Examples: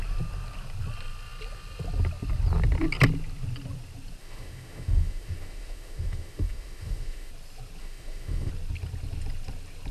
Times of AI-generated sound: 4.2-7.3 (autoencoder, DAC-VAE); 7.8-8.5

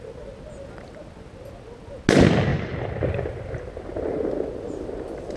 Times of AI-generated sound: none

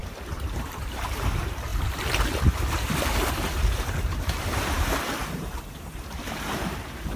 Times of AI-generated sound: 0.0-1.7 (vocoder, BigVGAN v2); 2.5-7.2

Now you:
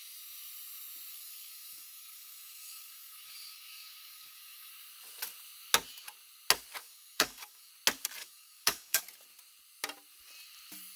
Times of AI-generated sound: 1.1-4.7 (codec, DAC); 6.8-7.7; 8.2-9.0

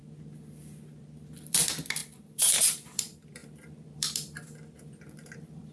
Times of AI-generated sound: 1.0-3.4 (vocoder, BigVGAN v2); 3.9-5.7